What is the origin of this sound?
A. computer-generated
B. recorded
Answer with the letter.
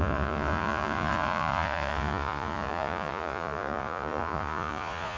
A